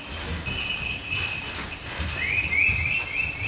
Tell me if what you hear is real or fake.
real